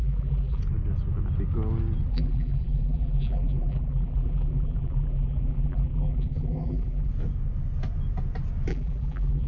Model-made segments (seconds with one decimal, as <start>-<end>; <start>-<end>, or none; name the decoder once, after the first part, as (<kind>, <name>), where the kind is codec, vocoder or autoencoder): 0.0-0.6 (vocoder, BigVGAN v2); 2.1-7.1; 8.7-9.5